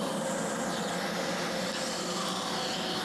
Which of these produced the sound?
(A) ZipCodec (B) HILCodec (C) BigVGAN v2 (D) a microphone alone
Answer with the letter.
D